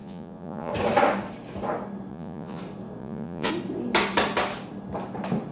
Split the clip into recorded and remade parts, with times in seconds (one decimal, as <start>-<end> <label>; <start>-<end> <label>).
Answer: 0.0-0.7 remade; 0.7-2.1 recorded; 2.1-2.6 remade; 2.6-3.0 recorded; 3.0-3.5 remade; 3.5-5.5 recorded